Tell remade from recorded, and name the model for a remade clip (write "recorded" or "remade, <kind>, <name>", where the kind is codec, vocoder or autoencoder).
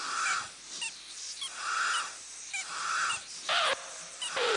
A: recorded